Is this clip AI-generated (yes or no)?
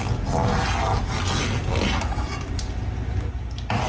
no